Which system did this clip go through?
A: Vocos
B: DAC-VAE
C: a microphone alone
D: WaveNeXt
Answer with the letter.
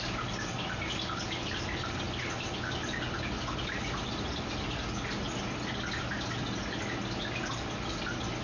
C